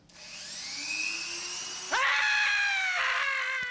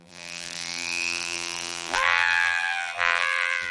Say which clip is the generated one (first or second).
second